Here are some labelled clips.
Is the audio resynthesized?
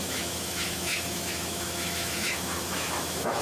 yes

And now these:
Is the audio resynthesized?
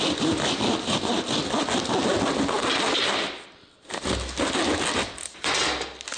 no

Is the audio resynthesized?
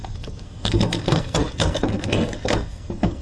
yes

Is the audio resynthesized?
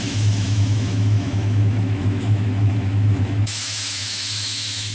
yes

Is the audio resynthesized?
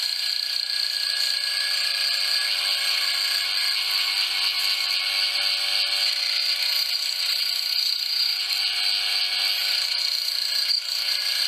no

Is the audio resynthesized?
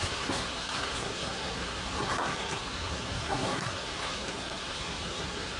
yes